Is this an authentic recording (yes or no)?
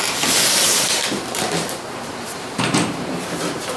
no